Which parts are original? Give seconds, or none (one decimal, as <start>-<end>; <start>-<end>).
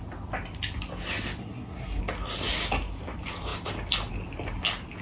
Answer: 0.0-1.4; 2.0-5.0